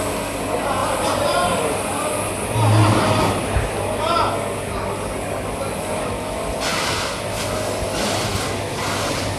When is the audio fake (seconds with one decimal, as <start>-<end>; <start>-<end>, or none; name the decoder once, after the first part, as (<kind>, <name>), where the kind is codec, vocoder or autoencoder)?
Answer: none